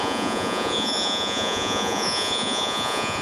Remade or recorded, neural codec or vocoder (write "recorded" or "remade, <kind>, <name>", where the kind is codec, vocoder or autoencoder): remade, vocoder, Vocos